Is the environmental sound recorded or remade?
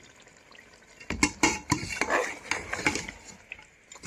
recorded